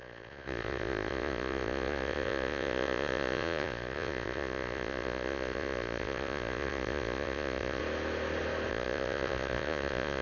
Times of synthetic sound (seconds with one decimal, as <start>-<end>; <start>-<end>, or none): 0.0-7.8; 8.7-10.2